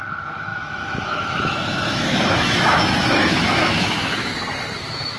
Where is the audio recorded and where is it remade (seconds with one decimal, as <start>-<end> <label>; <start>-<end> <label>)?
0.0-4.3 remade; 4.3-4.8 recorded; 4.8-5.2 remade